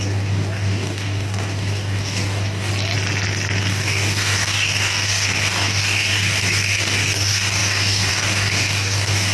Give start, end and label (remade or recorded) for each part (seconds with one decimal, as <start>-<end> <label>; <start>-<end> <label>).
0.0-2.7 remade; 2.7-3.6 recorded; 3.6-9.3 remade

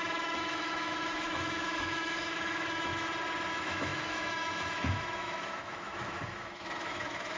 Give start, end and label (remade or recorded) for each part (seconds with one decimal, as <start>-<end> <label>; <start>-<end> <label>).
0.0-2.9 remade; 2.9-3.5 recorded; 3.5-7.4 remade

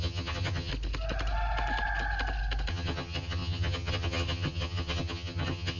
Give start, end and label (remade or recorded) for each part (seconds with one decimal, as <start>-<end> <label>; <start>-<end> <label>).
0.0-0.7 remade; 0.7-2.7 recorded; 2.7-5.8 remade

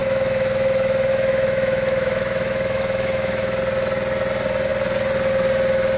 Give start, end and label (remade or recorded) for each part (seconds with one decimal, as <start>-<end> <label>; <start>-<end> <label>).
0.0-3.6 remade; 3.6-6.0 recorded

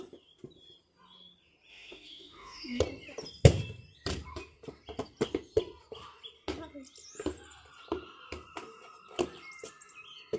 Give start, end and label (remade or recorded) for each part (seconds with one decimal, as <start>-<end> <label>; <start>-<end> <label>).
0.0-1.7 recorded; 1.7-2.8 remade; 2.8-10.4 recorded

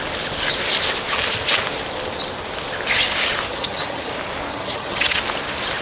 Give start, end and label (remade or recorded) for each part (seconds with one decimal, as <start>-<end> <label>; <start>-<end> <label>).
0.0-3.5 recorded; 3.5-4.1 remade; 4.1-4.5 recorded; 4.5-5.2 remade; 5.2-5.8 recorded

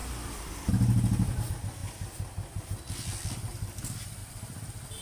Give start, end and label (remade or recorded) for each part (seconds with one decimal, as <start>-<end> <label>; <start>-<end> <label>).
0.0-0.7 remade; 0.7-4.2 recorded; 4.2-5.0 remade